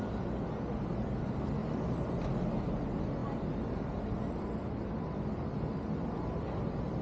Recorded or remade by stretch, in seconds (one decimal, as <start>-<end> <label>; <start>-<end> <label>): 0.0-7.0 recorded